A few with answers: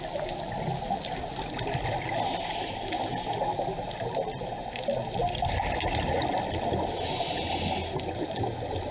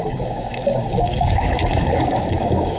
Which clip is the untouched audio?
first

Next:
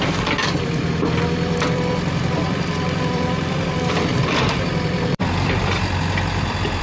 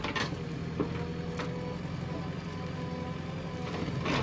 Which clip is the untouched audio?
second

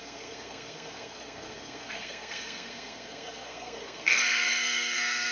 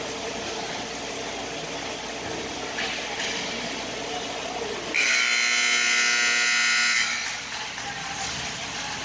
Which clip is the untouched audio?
second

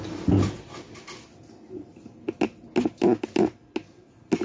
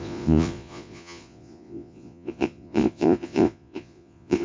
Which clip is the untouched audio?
first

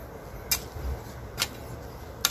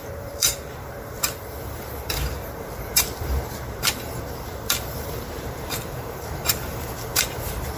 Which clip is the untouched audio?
first